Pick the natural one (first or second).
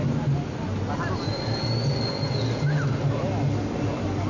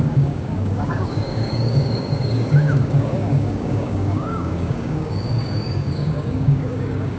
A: first